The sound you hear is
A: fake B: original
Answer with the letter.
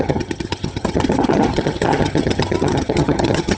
A